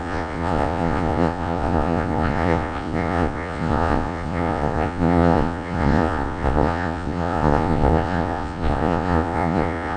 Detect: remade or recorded remade